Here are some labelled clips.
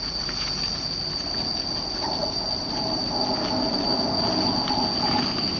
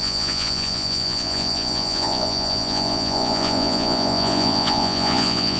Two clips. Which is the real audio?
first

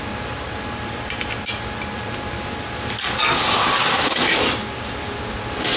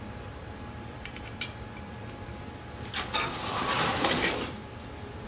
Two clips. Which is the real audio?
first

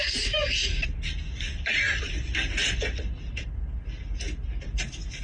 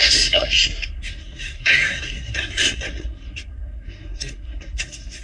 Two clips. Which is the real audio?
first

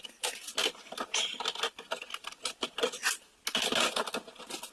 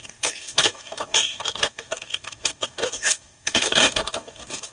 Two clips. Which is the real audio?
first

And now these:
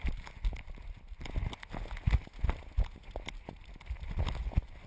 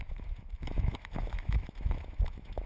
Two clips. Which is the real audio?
first